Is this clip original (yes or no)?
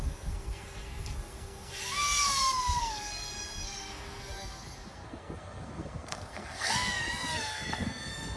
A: no